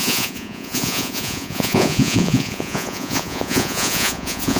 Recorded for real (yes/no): no